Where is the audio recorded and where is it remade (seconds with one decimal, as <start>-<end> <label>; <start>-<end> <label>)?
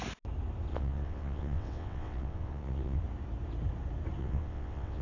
0.0-0.7 recorded; 0.7-3.0 remade; 3.0-4.2 recorded; 4.2-5.0 remade